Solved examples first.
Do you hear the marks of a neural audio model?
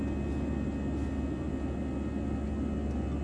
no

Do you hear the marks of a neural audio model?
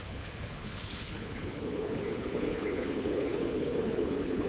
yes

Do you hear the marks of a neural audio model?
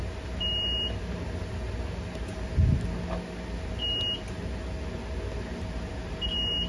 no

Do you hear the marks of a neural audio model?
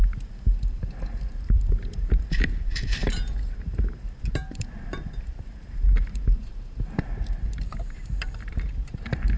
yes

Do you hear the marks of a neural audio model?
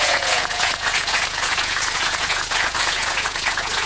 yes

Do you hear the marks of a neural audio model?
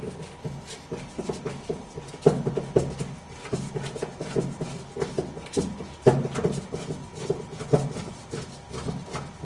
no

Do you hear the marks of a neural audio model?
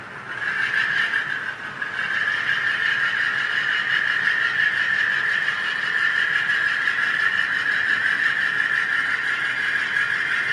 no